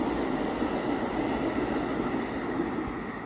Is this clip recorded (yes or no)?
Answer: yes